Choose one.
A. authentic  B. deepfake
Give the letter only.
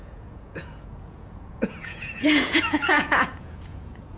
B